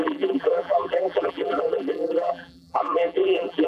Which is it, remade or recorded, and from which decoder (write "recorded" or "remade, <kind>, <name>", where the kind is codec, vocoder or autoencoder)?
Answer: remade, vocoder, BigVGAN v2